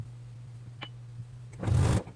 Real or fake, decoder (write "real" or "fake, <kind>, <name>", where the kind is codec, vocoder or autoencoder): real